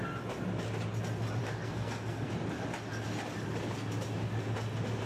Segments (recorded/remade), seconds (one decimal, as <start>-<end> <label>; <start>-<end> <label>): 0.0-1.4 recorded; 1.4-2.3 remade; 2.3-5.1 recorded